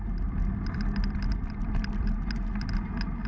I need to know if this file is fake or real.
real